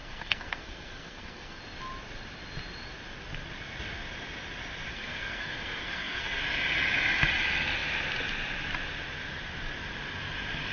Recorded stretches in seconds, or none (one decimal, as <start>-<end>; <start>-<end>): 1.6-4.9; 6.4-10.7